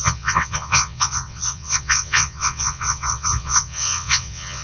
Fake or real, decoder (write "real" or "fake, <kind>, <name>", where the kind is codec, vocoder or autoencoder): fake, vocoder, WaveNeXt